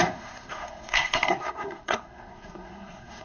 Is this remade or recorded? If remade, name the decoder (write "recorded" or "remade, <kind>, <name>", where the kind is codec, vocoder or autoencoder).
remade, codec, SNAC